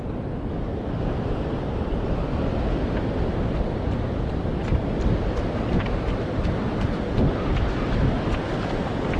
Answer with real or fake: real